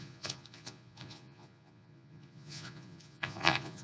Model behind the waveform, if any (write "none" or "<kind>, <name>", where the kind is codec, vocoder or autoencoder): vocoder, Vocos